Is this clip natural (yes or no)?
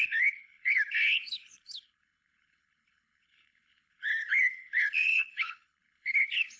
no